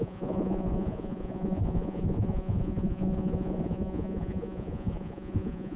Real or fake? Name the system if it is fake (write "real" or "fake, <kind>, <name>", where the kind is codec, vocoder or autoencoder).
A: fake, vocoder, Vocos